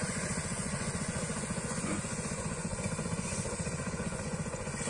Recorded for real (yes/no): no